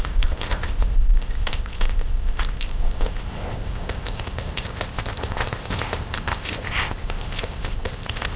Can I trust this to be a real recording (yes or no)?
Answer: no